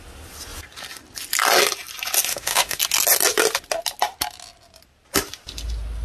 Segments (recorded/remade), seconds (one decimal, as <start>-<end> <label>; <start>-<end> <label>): 0.0-2.3 recorded; 2.3-2.8 remade; 2.8-6.0 recorded